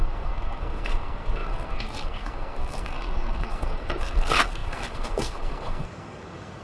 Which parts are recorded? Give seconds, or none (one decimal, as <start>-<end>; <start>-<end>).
none